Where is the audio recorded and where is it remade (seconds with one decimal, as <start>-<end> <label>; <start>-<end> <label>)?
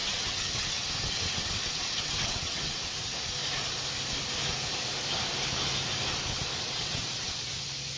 0.0-3.0 remade; 3.0-6.5 recorded; 6.5-7.6 remade; 7.6-8.0 recorded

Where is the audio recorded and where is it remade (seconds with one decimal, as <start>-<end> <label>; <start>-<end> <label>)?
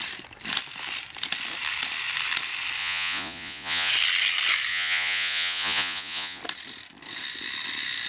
0.0-2.8 recorded; 2.8-3.9 remade; 3.9-4.7 recorded; 4.7-6.4 remade; 6.4-8.1 recorded